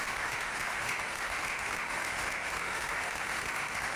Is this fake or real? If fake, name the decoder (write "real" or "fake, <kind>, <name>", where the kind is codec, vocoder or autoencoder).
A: fake, autoencoder, DAC-VAE